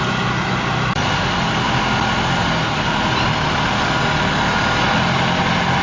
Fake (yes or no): no